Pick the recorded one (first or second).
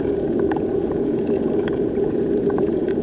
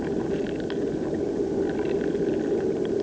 second